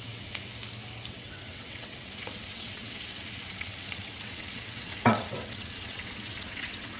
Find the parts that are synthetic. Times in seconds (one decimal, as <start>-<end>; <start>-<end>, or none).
0.0-0.5; 1.1-7.0